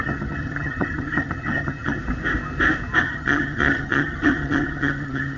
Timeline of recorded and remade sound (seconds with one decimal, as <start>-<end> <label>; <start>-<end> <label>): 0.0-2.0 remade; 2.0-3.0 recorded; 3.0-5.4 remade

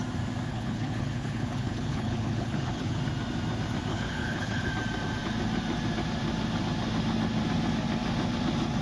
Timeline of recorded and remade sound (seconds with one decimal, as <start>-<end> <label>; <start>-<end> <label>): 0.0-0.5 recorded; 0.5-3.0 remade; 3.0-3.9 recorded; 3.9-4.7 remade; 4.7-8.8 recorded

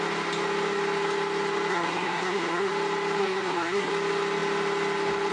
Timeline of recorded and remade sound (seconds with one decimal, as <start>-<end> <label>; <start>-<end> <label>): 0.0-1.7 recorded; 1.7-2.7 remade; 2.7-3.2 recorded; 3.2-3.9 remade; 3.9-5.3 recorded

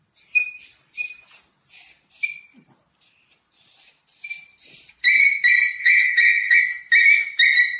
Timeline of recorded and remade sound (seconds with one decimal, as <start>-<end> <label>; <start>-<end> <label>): 0.0-5.8 recorded; 5.8-6.6 remade; 6.6-7.8 recorded

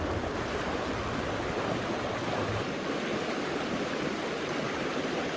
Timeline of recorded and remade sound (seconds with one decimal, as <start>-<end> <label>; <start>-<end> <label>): 0.0-3.1 recorded; 3.1-4.0 remade; 4.0-5.4 recorded

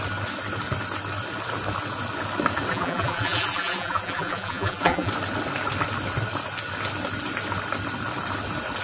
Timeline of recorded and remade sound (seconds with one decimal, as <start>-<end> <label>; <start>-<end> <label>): 0.0-2.7 recorded; 2.7-5.1 remade; 5.1-8.8 recorded